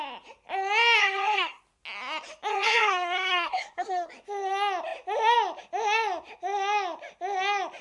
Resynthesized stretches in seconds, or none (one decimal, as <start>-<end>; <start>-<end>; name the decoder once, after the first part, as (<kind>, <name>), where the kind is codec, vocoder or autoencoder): 1.0-1.6 (codec, SNAC); 2.5-4.1